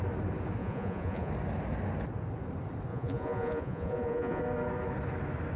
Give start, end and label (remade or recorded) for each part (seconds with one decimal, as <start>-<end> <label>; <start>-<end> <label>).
0.0-0.6 recorded; 0.6-1.3 remade; 1.3-2.9 recorded; 2.9-4.4 remade; 4.4-5.6 recorded